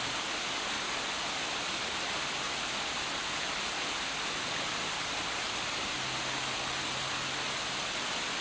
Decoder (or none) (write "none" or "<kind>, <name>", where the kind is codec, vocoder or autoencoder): none